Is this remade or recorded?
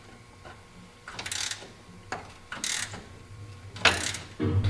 recorded